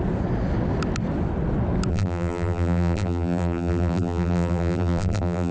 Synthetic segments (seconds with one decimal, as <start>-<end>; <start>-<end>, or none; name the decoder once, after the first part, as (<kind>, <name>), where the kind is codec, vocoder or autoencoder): 1.9-5.5 (vocoder, BigVGAN v2)